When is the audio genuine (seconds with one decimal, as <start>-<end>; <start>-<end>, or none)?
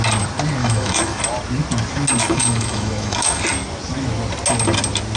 0.0-0.6; 1.2-2.2; 3.4-5.2